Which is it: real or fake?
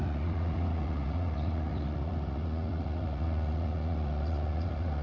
fake